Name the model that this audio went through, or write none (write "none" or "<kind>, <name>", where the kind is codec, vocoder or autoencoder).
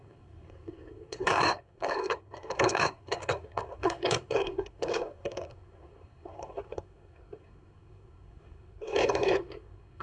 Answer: codec, SNAC